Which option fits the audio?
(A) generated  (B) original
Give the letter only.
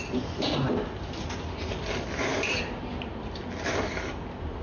B